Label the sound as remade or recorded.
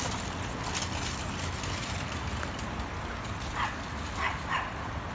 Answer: recorded